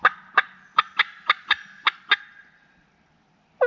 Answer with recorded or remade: recorded